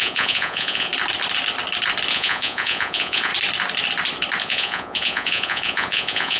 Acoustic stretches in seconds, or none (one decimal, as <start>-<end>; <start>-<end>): 0.9-2.1; 3.3-4.4